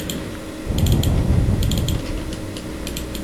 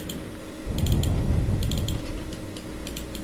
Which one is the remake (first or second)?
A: first